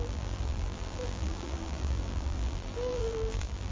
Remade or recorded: remade